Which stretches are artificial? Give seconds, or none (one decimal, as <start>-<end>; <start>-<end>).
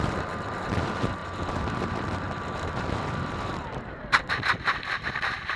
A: 0.0-5.6